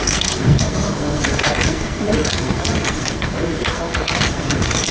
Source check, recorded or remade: remade